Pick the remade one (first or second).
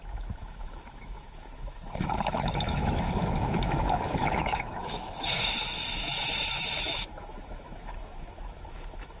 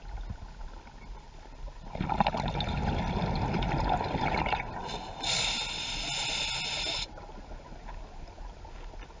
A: first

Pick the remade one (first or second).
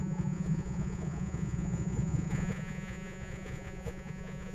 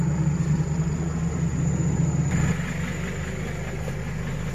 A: first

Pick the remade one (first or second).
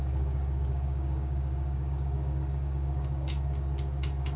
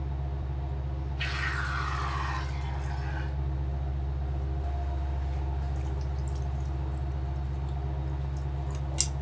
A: first